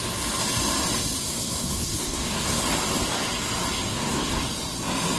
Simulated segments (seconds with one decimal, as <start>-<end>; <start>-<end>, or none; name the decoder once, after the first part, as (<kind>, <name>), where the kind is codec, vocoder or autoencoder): 1.2-2.6 (codec, SNAC); 3.9-4.4